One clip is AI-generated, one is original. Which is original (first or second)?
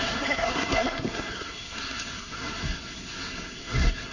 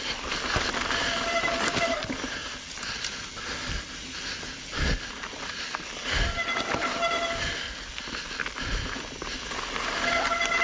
second